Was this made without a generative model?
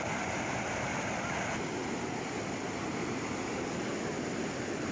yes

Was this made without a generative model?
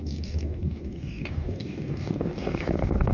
no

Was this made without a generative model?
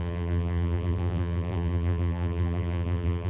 no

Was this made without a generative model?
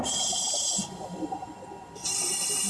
yes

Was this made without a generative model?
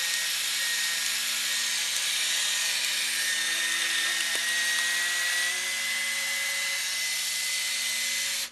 yes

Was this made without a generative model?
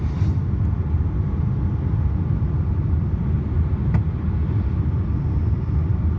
yes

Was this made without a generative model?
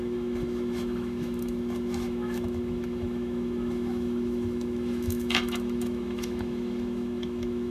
no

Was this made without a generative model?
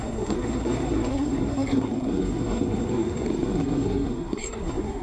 no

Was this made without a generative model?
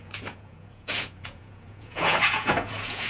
no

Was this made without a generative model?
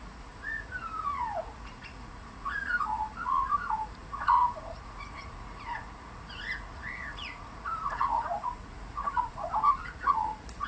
no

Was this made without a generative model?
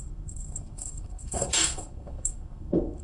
no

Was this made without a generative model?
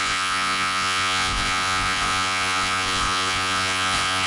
no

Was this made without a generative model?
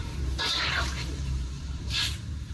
no